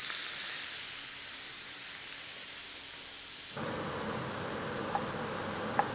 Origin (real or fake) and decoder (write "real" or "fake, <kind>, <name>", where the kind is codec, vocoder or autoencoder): real